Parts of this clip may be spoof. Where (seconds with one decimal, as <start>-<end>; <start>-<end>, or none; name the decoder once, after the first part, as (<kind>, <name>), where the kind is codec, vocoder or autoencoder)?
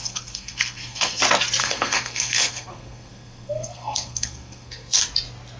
0.0-1.2 (codec, SNAC); 1.6-5.0